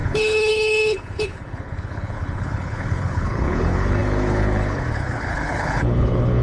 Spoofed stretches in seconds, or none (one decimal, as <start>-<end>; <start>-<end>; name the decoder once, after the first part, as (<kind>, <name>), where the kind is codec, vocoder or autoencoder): 0.0-6.4 (codec, HILCodec)

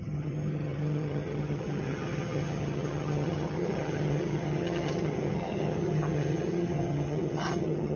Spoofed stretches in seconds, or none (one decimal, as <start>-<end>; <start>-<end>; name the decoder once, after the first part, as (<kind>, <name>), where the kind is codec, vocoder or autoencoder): 0.0-8.0 (vocoder, HiFi-GAN)

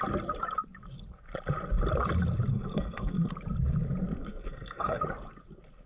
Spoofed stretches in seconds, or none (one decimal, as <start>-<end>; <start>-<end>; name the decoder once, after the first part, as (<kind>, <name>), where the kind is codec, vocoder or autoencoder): 2.5-3.3 (codec, SNAC); 4.2-5.0